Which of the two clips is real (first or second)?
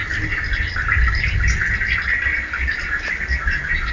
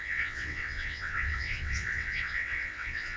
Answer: first